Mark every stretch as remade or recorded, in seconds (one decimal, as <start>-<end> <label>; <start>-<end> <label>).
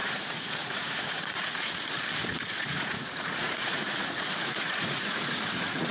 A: 0.0-1.7 remade; 1.7-2.3 recorded; 2.3-5.9 remade